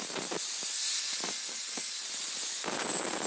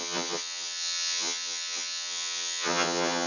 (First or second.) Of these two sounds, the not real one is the second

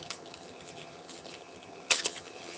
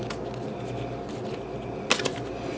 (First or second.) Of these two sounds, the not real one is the first